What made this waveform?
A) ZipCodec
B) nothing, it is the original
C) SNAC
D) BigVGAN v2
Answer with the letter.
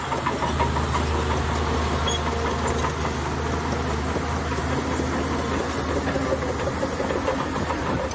B